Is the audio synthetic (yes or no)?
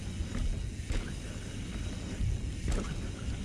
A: no